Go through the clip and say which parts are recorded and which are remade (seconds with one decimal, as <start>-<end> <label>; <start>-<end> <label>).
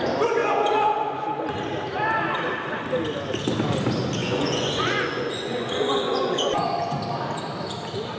0.0-0.4 recorded; 0.4-1.5 remade; 1.5-4.2 recorded; 4.2-7.0 remade; 7.0-8.2 recorded